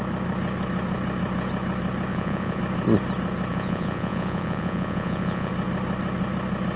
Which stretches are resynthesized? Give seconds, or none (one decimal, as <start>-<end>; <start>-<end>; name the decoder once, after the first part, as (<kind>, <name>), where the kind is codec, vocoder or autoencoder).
2.1-2.6 (vocoder, Vocos); 3.5-5.5